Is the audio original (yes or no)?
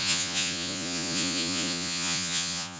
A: no